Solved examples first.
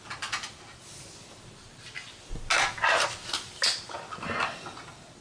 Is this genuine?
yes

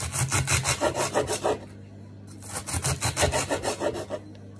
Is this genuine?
yes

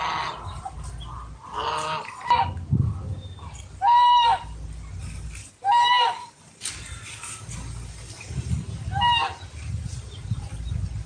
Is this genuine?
yes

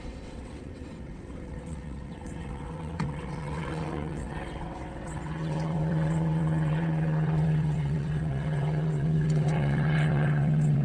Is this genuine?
no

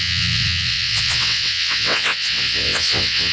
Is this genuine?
no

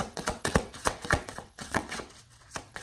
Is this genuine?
no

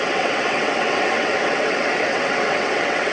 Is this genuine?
no